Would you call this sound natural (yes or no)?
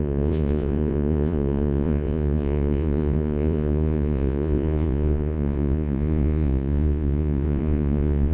no